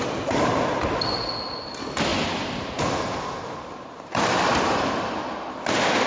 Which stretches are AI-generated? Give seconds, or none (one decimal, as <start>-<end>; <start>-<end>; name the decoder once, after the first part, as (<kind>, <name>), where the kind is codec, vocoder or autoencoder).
none